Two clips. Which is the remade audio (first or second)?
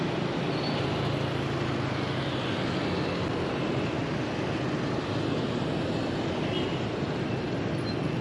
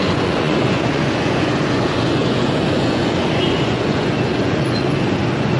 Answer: second